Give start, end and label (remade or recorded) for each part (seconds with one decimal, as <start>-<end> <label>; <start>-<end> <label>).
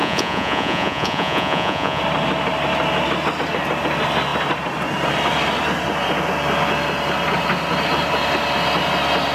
0.0-2.0 remade; 2.0-9.3 recorded